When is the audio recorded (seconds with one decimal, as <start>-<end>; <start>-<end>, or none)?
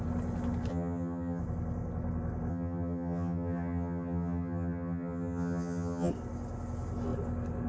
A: 0.0-0.7; 1.4-2.5; 6.1-7.7